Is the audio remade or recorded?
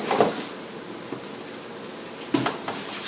recorded